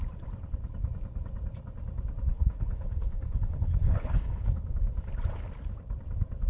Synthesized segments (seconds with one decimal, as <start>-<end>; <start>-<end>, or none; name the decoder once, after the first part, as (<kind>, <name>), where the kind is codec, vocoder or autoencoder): 2.3-4.7 (codec, HILCodec)